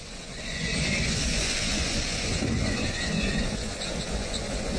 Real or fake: fake